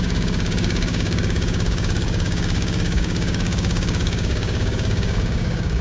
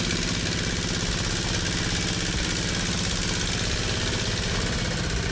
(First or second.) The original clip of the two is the second